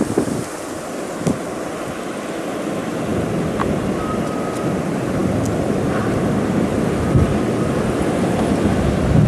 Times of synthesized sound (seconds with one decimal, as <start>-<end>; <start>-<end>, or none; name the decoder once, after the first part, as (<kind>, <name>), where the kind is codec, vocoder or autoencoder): none

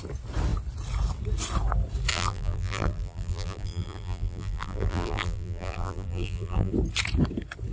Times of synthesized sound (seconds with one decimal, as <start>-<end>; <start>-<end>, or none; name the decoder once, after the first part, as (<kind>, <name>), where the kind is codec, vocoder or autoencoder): 2.1-6.7 (vocoder, BigVGAN v2)

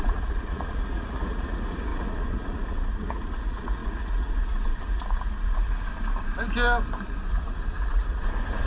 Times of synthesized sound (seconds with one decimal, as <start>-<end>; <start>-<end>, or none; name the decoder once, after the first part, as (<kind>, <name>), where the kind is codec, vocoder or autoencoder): 0.0-5.9 (vocoder, Vocos); 7.3-8.7

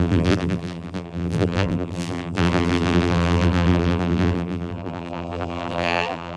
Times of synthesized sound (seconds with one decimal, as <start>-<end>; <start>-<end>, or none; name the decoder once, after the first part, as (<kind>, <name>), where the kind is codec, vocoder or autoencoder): 0.0-6.4 (vocoder, BigVGAN v2)